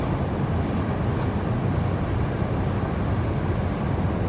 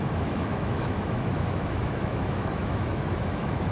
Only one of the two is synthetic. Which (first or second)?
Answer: second